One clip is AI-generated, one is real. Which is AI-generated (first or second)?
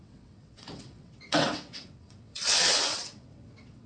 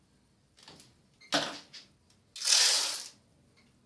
first